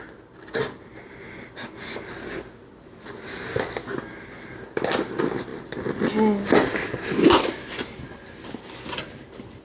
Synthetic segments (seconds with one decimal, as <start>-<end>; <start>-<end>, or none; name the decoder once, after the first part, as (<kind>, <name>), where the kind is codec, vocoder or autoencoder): none